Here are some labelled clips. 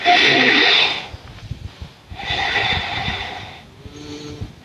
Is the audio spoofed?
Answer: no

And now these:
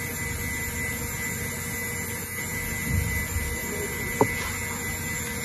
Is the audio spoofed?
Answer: no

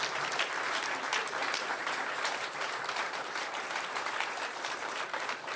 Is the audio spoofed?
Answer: yes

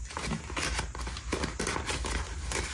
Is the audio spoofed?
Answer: no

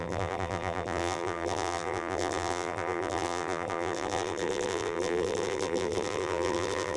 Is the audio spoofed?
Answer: yes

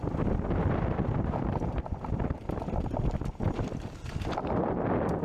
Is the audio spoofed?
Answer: yes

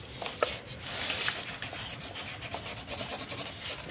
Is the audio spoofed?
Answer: no